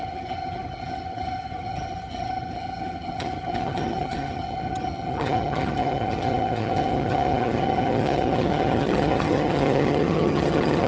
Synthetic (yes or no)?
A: yes